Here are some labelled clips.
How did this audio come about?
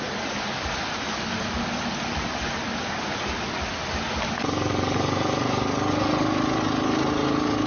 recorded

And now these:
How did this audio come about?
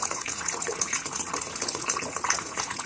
remade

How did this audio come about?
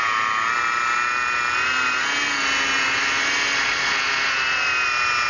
recorded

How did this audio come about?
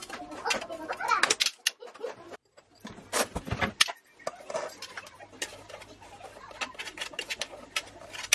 recorded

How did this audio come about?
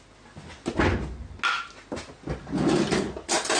recorded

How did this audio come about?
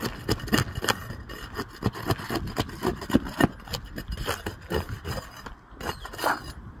recorded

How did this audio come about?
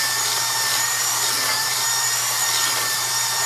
remade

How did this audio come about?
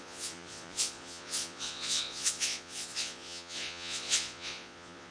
remade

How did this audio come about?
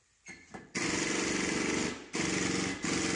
recorded